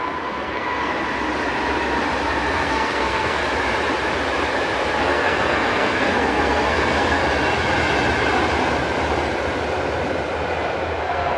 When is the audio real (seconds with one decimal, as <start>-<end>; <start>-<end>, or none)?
0.9-2.5; 3.4-5.0; 7.2-11.0